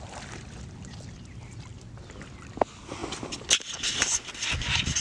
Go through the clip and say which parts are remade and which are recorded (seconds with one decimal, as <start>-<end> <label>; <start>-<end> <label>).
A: 0.0-5.0 recorded